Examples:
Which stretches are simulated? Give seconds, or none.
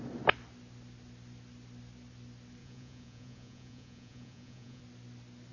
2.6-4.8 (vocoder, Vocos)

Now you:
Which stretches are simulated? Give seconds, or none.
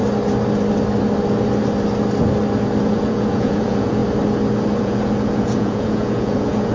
2.8-4.0 (vocoder, Vocos); 4.8-6.7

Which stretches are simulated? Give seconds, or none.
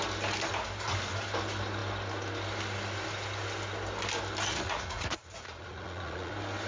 4.5-6.3 (vocoder, Vocos)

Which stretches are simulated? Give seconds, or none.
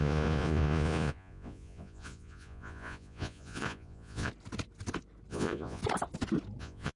0.0-4.3 (vocoder, Vocos); 5.3-5.8; 6.6-7.0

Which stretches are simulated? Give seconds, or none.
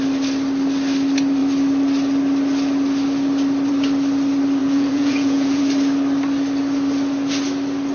4.6-5.6 (vocoder, Vocos)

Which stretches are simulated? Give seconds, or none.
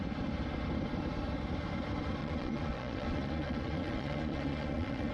2.2-5.1 (vocoder, Vocos)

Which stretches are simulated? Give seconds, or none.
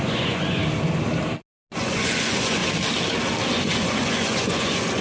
0.0-0.6 (vocoder, Vocos); 1.8-2.6; 3.5-5.0